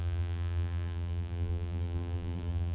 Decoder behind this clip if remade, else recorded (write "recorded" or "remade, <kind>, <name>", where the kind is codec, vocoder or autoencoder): remade, vocoder, BigVGAN v2